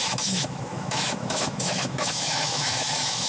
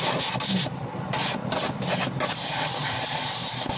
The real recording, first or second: second